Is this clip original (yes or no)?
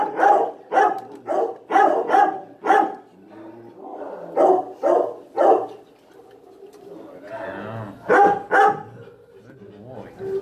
yes